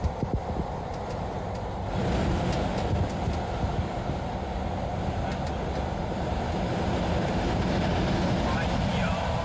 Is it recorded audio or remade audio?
recorded